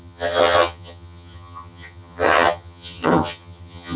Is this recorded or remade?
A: remade